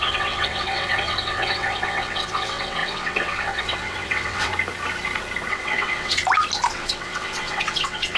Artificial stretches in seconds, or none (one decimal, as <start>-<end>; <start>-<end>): 0.0-4.5; 5.5-6.2; 6.7-8.2